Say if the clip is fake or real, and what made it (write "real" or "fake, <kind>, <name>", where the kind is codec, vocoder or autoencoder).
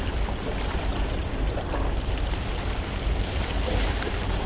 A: fake, vocoder, BigVGAN v2